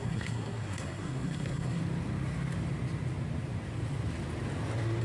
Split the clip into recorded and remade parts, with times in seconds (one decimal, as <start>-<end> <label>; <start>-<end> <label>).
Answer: 0.0-1.8 remade; 1.8-5.0 recorded